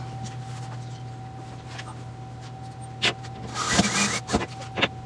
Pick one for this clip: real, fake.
real